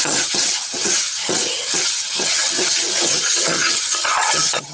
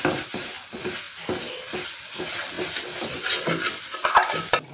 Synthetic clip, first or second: first